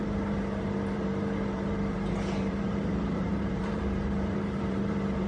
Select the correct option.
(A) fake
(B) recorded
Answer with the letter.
A